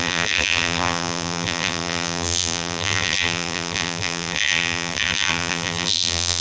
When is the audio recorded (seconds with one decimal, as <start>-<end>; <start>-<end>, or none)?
none